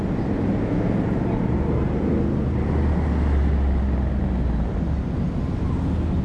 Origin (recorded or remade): recorded